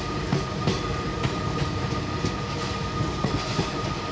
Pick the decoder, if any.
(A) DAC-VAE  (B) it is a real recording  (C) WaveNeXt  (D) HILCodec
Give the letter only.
B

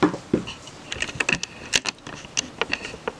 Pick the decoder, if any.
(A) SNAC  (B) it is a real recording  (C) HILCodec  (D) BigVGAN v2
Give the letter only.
B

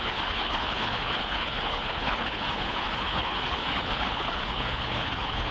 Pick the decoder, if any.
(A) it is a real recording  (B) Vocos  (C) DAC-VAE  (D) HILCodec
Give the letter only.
D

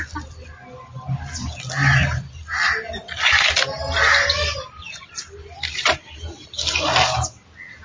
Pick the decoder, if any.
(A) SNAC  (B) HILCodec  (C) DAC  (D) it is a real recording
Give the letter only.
D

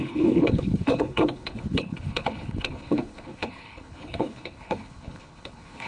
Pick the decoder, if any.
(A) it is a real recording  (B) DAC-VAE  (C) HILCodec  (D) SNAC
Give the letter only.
C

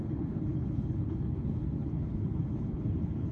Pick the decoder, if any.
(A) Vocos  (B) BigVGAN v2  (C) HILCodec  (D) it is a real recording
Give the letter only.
C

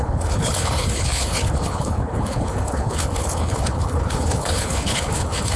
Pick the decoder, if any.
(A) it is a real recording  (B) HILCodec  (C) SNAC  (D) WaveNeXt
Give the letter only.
B